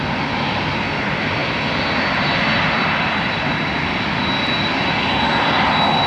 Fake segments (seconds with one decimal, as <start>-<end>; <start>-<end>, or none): none